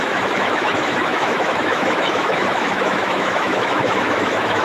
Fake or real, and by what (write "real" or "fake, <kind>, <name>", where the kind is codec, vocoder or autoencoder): fake, autoencoder, DAC-VAE